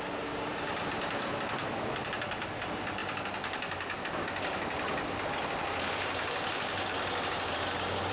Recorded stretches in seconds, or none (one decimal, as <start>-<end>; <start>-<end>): 0.0-0.5; 2.1-8.1